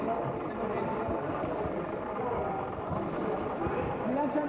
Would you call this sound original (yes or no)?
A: yes